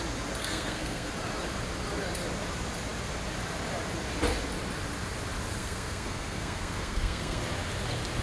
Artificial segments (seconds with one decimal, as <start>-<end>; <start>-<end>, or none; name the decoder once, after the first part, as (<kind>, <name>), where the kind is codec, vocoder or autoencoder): 0.4-1.1 (codec, SNAC); 5.6-7.4